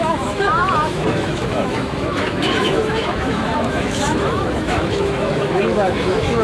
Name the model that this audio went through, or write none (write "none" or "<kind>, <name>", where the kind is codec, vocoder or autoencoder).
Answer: autoencoder, DAC-VAE